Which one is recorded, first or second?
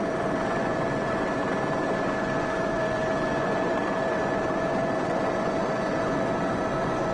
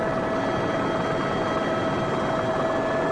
second